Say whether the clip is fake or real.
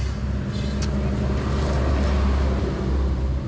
real